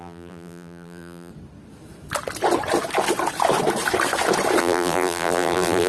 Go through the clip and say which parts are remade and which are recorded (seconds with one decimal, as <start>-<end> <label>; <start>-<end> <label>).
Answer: 0.0-1.3 remade; 1.3-4.6 recorded; 4.6-5.9 remade